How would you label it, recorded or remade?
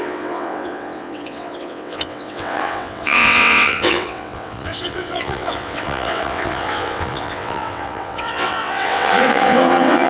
remade